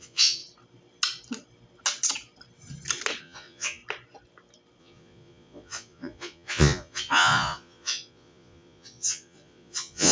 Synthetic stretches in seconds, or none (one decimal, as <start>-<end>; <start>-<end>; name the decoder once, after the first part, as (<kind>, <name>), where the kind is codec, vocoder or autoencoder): 0.0-0.4 (vocoder, Vocos); 3.2-3.8; 4.8-10.1